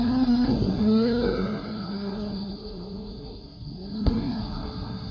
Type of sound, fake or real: fake